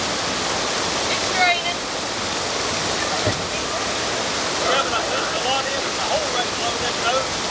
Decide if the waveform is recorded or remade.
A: recorded